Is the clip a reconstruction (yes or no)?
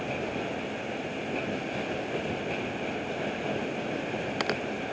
no